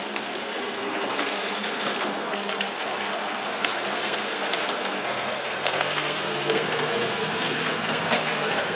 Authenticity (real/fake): fake